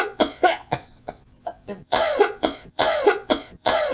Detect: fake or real fake